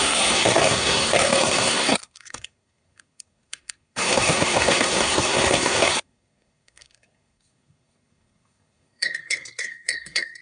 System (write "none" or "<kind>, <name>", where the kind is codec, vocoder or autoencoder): codec, SNAC